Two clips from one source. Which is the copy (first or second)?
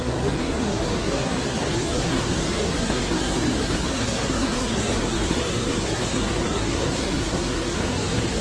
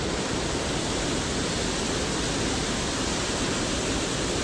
first